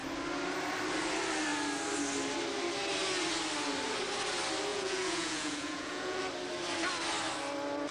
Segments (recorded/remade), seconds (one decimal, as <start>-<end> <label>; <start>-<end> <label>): 0.0-4.7 recorded; 4.7-6.2 remade; 6.2-7.9 recorded